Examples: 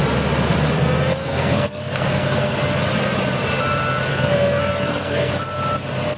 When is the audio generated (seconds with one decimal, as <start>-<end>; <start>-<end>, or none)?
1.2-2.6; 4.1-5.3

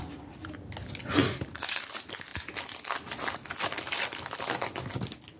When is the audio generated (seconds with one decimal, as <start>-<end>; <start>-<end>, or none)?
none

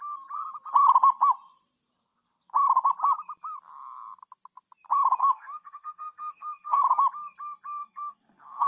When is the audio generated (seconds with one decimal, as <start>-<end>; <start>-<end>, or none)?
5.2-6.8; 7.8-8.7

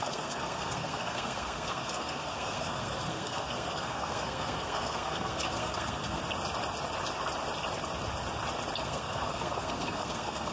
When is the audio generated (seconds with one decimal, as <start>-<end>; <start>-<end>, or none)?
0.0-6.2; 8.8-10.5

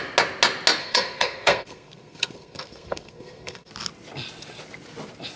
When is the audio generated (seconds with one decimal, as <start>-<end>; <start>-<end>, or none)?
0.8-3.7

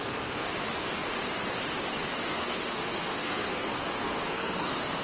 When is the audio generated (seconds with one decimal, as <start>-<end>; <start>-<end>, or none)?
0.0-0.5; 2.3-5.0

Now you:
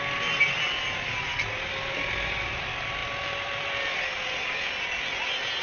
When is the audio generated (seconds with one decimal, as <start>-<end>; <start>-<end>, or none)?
none

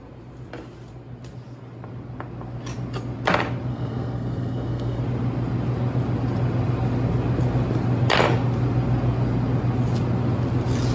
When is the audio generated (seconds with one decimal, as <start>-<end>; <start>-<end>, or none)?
3.7-5.0